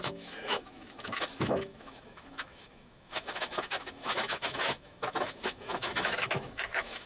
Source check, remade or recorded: remade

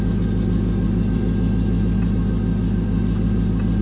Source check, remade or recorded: recorded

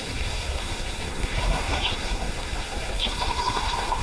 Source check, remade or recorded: remade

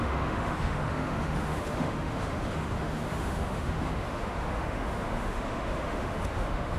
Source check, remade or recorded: remade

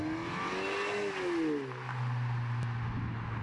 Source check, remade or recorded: recorded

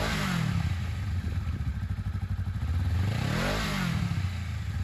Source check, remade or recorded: recorded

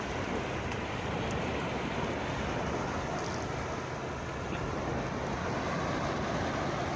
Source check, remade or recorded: recorded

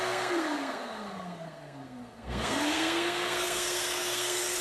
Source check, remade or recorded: remade